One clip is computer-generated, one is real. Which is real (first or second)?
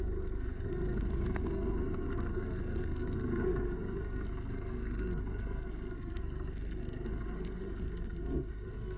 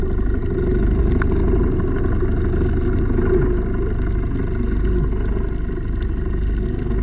second